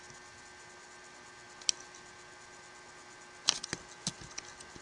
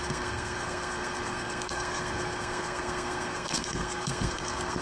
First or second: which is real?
first